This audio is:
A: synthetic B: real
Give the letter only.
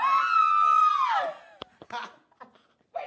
B